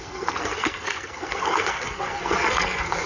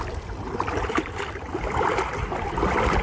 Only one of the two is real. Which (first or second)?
second